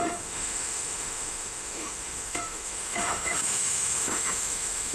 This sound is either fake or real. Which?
fake